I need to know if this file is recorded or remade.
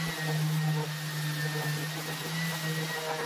recorded